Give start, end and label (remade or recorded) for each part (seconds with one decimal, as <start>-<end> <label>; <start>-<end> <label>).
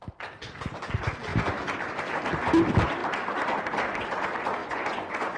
0.0-4.6 recorded; 4.6-5.4 remade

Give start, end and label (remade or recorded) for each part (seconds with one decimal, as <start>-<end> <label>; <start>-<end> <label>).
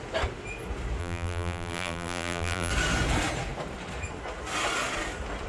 0.0-1.0 recorded; 1.0-2.7 remade; 2.7-5.5 recorded